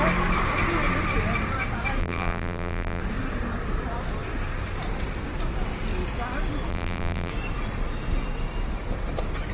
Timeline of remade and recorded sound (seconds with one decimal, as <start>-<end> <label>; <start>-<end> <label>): 0.0-2.0 recorded; 2.0-3.0 remade; 3.0-6.7 recorded; 6.7-7.3 remade; 7.3-9.5 recorded